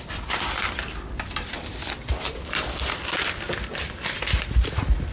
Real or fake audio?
fake